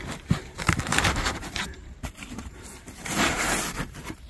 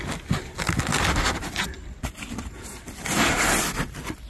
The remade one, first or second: first